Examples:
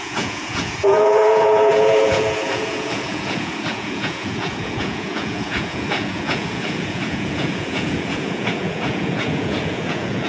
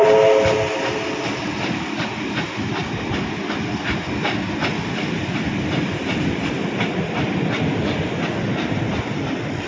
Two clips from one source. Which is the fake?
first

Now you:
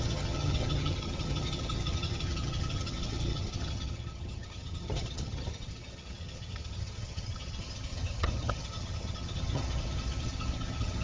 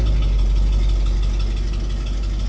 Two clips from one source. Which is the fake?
first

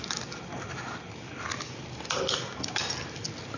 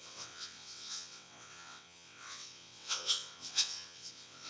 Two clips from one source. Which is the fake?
second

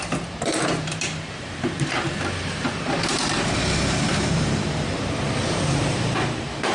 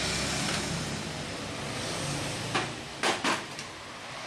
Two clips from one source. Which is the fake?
first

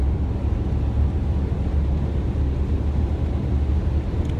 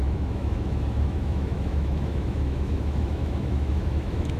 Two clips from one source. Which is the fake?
second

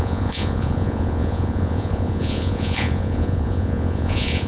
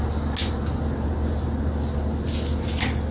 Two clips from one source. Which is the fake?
first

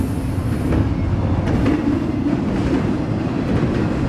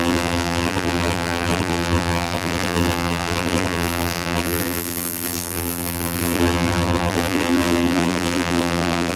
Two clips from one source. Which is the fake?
second